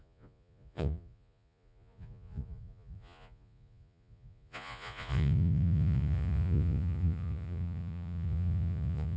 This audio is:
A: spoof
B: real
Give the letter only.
A